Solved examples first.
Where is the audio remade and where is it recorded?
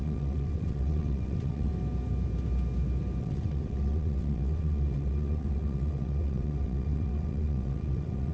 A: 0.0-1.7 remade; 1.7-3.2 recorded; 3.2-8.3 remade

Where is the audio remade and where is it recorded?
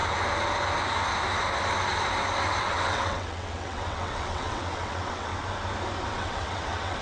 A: 0.0-2.6 recorded; 2.6-5.3 remade; 5.3-6.1 recorded; 6.1-7.0 remade